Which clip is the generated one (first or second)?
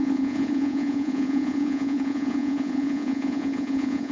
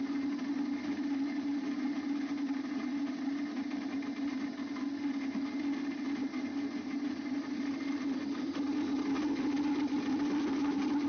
first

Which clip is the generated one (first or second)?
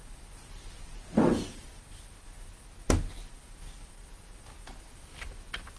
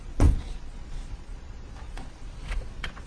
second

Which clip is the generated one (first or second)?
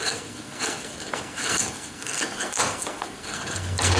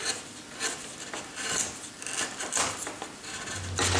first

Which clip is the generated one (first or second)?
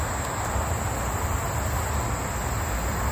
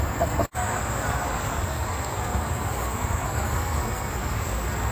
second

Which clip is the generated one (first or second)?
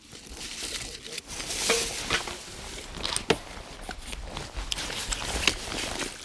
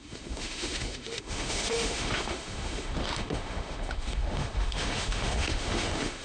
second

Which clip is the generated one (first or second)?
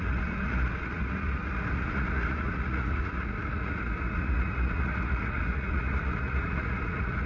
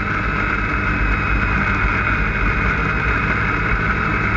first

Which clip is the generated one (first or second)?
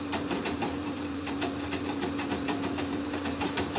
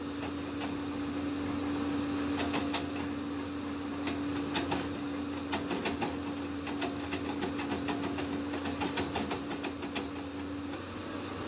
first